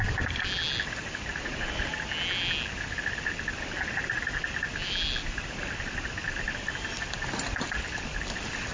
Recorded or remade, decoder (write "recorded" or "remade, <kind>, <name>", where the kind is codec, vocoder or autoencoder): recorded